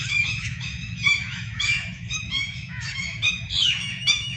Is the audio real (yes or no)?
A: no